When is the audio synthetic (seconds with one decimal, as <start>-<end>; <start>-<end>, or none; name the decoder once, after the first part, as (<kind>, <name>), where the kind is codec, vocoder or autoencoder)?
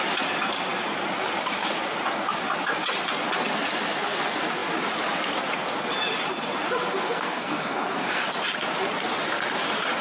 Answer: 6.9-8.2 (codec, SNAC)